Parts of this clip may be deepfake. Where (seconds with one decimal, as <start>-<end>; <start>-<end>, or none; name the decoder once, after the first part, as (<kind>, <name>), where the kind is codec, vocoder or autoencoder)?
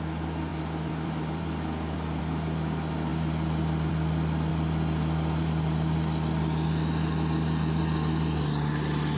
0.5-2.2 (vocoder, BigVGAN v2); 3.1-3.9